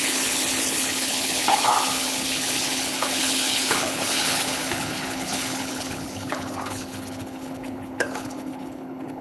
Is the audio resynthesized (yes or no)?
yes